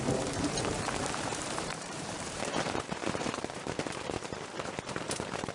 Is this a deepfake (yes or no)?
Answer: yes